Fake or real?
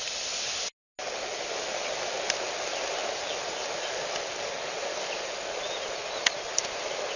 real